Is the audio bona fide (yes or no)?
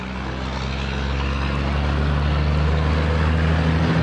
yes